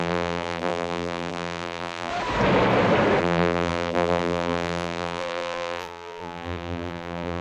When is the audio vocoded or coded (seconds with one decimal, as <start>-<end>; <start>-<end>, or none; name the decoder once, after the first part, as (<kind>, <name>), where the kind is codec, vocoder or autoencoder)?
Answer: 0.0-2.1 (vocoder, BigVGAN v2); 3.2-7.4